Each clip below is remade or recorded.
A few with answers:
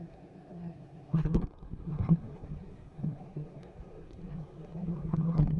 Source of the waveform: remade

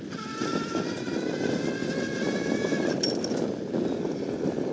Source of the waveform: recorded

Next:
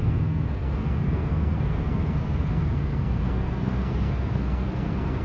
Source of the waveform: remade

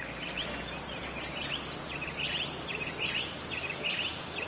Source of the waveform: recorded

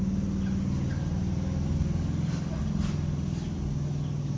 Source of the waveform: recorded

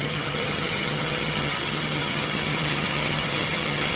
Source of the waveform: remade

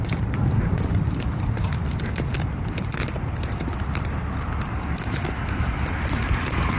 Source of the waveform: recorded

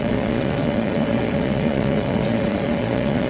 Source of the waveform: remade